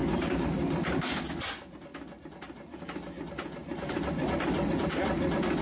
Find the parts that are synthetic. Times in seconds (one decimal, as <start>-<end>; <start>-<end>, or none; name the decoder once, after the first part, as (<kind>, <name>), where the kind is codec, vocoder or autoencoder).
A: 0.0-1.0 (vocoder, BigVGAN v2); 3.6-4.8